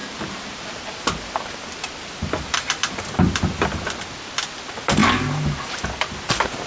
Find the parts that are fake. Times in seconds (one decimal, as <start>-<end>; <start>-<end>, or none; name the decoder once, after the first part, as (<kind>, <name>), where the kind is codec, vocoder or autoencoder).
none